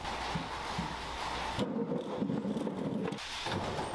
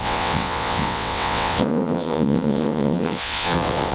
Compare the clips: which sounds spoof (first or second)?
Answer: second